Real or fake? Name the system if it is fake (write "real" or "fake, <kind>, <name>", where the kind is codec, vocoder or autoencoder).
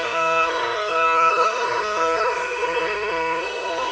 fake, codec, SNAC